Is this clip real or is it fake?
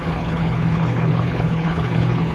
fake